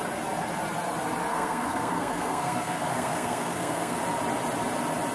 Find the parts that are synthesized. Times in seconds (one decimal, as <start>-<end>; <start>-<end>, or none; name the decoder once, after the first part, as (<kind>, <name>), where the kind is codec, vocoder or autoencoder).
1.3-4.0 (codec, SNAC)